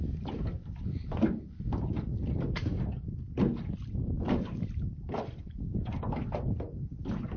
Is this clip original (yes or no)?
yes